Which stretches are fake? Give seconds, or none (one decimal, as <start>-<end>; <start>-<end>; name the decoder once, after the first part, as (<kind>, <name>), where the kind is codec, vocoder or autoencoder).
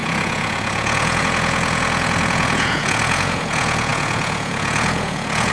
0.0-5.5 (vocoder, Vocos)